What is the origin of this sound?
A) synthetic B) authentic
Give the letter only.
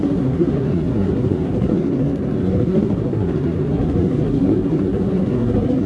A